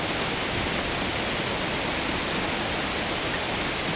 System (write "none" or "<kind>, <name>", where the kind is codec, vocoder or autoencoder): none